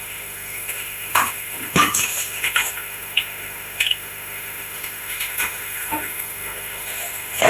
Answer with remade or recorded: remade